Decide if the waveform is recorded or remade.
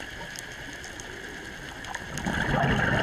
recorded